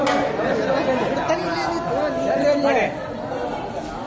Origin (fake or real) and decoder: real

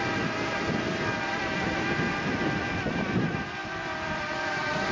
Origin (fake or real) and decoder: fake, vocoder, BigVGAN v2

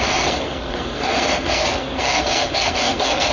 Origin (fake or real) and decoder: fake, codec, SNAC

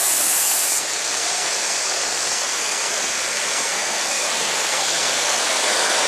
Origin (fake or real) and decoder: fake, codec, SNAC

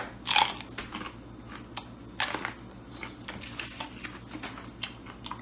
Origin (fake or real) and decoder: real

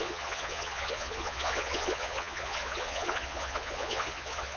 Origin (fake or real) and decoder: fake, vocoder, Vocos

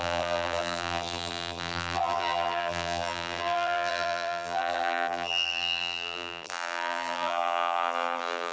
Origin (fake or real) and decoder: fake, vocoder, BigVGAN v2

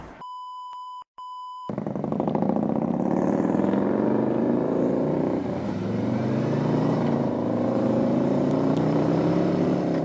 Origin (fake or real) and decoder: fake, vocoder, BigVGAN v2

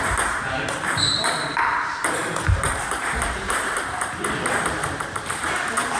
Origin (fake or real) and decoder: fake, vocoder, BigVGAN v2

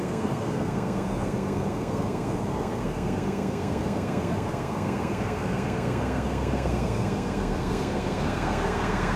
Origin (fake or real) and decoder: fake, codec, SNAC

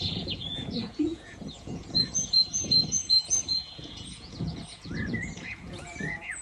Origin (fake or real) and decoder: fake, vocoder, Vocos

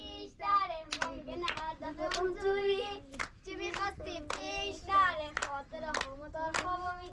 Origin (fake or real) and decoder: fake, vocoder, BigVGAN v2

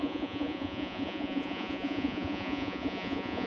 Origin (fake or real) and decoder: fake, vocoder, Vocos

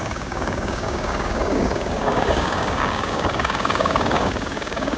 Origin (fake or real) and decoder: fake, codec, DAC